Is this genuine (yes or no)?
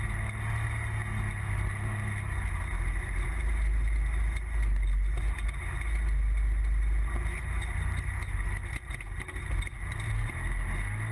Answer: yes